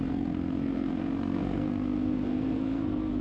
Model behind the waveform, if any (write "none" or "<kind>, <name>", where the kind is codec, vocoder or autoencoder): codec, SNAC